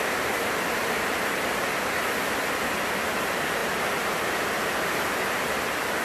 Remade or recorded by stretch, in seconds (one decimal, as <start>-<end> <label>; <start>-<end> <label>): 0.0-6.0 recorded